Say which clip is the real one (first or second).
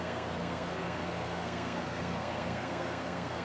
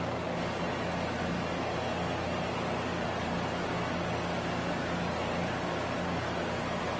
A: second